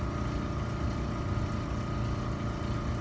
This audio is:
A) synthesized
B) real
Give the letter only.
B